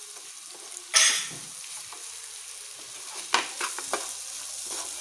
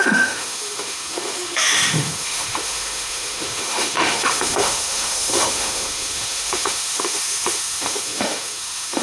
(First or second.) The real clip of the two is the first